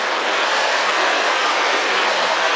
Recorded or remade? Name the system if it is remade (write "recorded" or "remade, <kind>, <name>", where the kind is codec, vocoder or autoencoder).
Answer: remade, codec, SNAC